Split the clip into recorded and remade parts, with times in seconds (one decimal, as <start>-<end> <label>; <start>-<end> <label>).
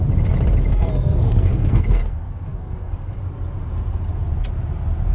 0.0-0.7 recorded; 0.7-3.2 remade; 3.2-5.1 recorded